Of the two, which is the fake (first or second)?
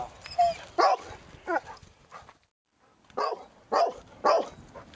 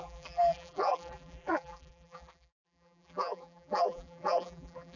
second